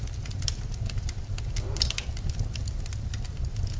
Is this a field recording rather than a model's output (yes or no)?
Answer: yes